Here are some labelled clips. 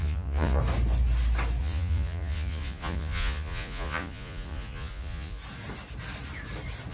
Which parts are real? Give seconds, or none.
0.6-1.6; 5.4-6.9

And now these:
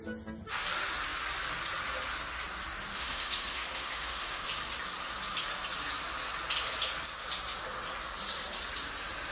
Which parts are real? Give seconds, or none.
0.0-2.9; 4.5-9.3